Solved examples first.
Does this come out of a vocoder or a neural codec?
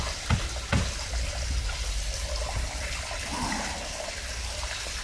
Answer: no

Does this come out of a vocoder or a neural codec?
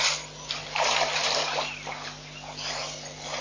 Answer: no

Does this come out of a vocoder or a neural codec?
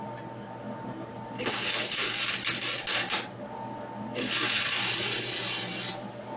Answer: no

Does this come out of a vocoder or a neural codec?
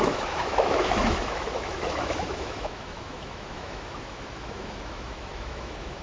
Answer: yes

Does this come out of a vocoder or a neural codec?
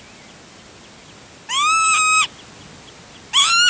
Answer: no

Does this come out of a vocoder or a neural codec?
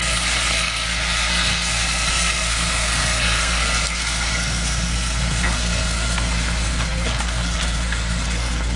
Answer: yes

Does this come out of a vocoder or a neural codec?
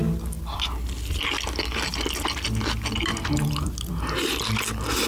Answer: no